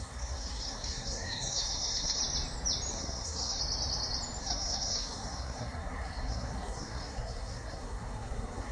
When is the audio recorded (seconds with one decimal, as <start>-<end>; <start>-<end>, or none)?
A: 2.2-2.9; 3.6-4.4